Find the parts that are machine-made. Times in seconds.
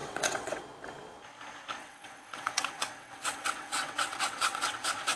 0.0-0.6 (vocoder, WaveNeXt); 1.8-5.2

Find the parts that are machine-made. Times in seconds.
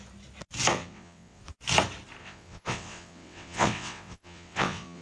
0.7-1.4 (vocoder, WaveNeXt); 2.2-5.0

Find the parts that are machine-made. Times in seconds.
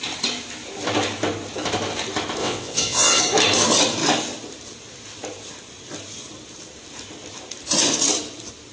2.4-3.2 (vocoder, WaveNeXt)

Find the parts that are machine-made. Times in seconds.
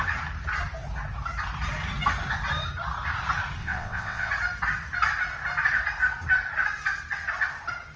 3.6-4.3 (vocoder, WaveNeXt)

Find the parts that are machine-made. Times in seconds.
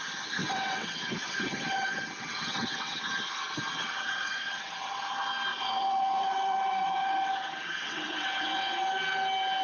0.4-3.0 (vocoder, WaveNeXt); 3.8-4.9; 5.5-8.8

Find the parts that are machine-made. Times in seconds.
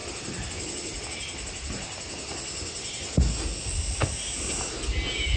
none